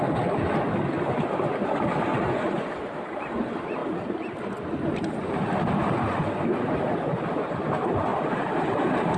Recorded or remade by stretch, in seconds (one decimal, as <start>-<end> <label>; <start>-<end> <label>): 0.0-2.1 recorded; 2.1-2.7 remade; 2.7-9.2 recorded